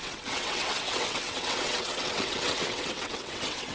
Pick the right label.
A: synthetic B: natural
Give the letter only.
A